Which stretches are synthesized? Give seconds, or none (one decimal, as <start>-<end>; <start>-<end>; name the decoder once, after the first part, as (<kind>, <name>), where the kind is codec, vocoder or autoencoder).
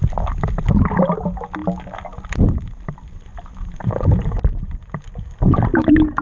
3.3-4.9 (vocoder, BigVGAN v2)